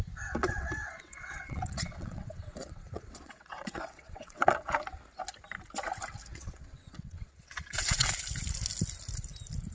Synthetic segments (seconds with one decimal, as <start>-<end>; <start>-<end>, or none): 0.4-4.7; 6.3-8.1